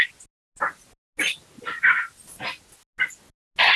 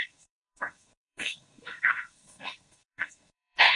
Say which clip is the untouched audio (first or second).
first